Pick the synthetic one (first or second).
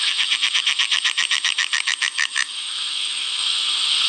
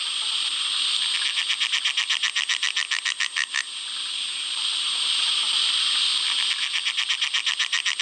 first